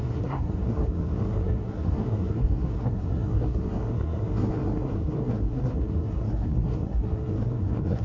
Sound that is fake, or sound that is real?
fake